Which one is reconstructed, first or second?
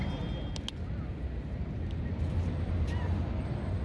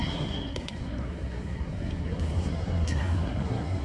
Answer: second